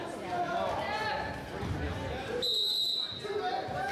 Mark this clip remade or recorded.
recorded